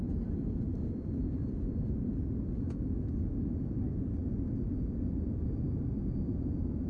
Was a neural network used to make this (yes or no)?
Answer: yes